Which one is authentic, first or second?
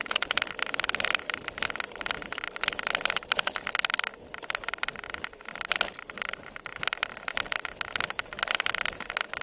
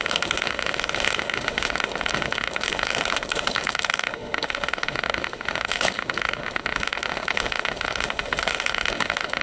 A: first